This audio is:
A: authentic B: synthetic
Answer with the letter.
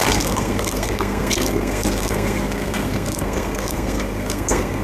B